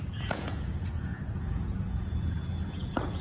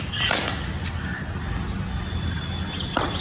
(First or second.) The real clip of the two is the second